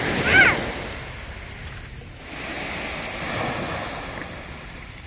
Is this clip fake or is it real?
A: real